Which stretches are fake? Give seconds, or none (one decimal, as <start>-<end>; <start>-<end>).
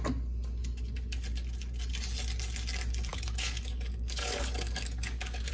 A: 3.1-5.5